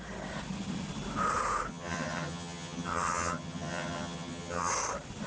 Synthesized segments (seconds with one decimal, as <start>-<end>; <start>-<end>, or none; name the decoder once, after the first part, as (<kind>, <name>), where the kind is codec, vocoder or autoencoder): 1.7-4.7 (vocoder, HiFi-GAN)

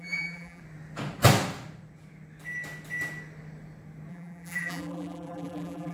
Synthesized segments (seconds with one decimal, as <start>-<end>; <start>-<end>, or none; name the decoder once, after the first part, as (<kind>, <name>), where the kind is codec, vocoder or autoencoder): 0.0-0.6 (vocoder, BigVGAN v2); 4.1-5.9

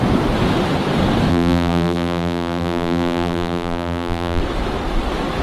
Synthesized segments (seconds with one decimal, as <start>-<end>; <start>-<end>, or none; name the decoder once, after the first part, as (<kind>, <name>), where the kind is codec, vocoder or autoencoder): 1.3-4.4 (vocoder, BigVGAN v2)

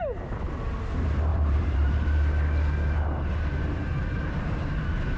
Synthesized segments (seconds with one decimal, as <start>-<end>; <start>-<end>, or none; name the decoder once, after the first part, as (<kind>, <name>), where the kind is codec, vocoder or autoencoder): 1.3-1.9 (vocoder, BigVGAN v2)

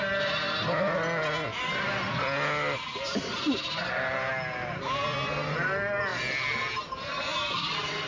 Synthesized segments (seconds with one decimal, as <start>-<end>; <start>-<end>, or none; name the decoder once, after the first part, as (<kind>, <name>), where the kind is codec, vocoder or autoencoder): 7.3-8.1 (vocoder, BigVGAN v2)

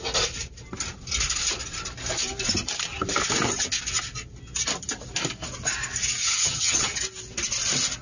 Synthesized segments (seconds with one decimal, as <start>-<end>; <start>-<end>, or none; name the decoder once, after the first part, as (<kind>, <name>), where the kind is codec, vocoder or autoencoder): 6.2-7.0 (vocoder, HiFi-GAN)